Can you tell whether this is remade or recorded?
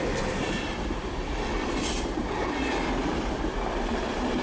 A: remade